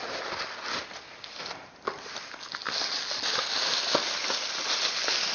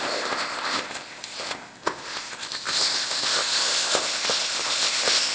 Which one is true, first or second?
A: first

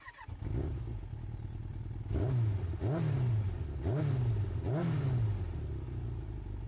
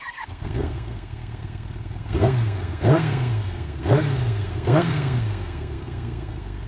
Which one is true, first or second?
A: first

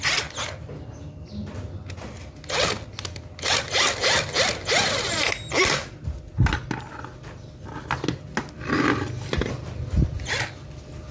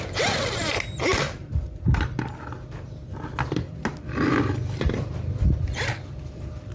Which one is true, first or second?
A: first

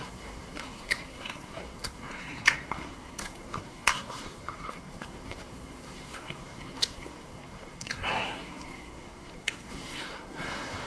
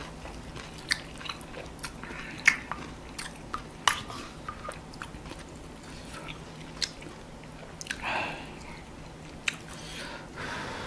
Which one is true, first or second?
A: second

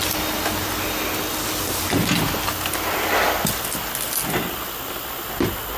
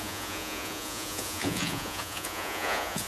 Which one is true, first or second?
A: first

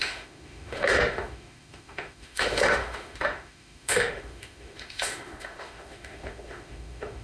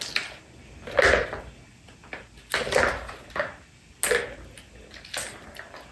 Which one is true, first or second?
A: second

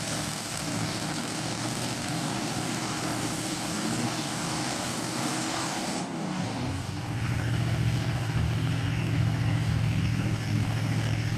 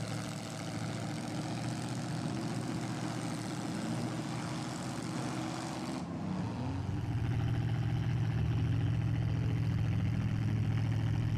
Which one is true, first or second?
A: second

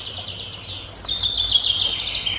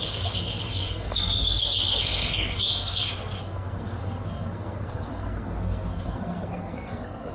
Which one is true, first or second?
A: first